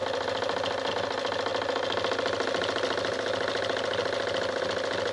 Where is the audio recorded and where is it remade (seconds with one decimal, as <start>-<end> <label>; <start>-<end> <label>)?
0.0-5.1 recorded